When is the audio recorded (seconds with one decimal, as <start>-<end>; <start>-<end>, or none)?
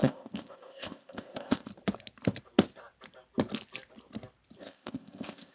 1.7-4.6